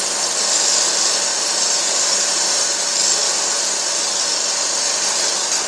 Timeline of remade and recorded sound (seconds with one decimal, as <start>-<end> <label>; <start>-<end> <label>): 0.0-1.3 recorded; 1.3-2.7 remade; 2.7-5.7 recorded